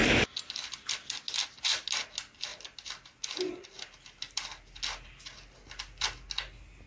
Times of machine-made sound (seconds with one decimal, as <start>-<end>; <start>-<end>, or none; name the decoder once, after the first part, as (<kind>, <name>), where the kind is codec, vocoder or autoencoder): none